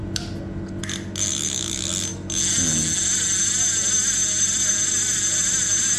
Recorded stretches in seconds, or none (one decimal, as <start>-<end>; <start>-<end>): 0.0-6.0